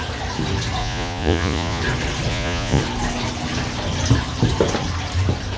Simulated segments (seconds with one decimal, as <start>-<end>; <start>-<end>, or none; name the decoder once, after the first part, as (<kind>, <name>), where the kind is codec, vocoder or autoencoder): 0.8-1.8 (vocoder, Vocos); 2.3-2.8